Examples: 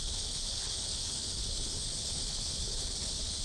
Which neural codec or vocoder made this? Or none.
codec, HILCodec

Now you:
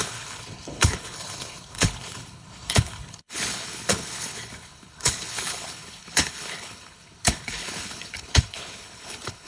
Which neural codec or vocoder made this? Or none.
codec, HILCodec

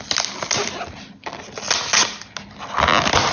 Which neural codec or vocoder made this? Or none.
none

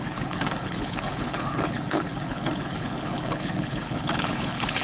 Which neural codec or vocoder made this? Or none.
codec, HILCodec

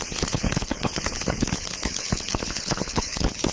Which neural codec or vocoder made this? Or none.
codec, HILCodec